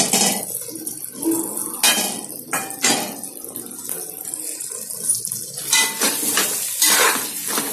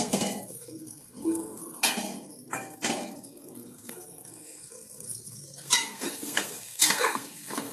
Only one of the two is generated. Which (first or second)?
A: second